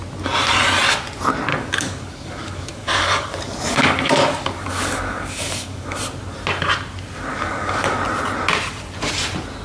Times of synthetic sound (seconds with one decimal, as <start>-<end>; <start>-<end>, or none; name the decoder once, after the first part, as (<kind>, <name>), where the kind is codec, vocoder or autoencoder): 1.5-6.0 (codec, DAC); 7.3-8.0